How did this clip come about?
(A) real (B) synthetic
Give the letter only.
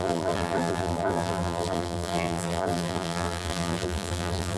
B